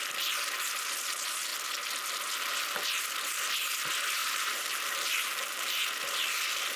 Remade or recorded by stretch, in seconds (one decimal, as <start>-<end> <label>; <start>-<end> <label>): 0.0-4.2 recorded; 4.2-5.8 remade; 5.8-6.8 recorded